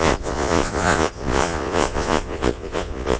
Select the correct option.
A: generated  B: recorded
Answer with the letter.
A